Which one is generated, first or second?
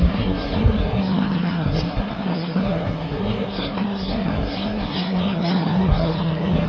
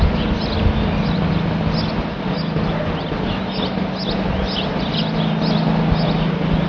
first